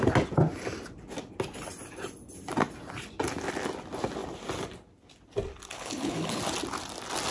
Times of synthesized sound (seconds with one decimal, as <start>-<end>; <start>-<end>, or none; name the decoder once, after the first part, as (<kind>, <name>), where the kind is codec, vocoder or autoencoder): 5.7-6.4 (codec, HILCodec)